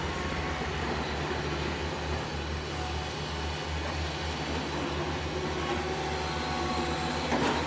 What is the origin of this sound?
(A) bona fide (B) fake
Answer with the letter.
A